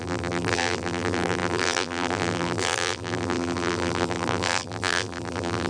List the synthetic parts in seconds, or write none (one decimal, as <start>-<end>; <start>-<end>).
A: 0.0-5.7